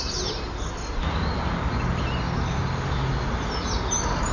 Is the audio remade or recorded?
recorded